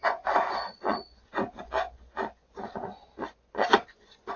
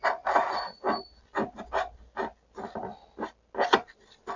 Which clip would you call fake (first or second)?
first